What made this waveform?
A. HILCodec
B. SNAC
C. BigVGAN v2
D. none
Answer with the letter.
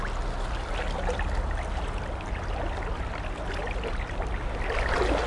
D